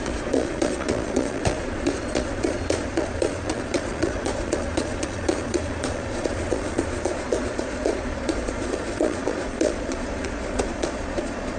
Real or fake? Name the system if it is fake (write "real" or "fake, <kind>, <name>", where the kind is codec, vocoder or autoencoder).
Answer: fake, vocoder, Vocos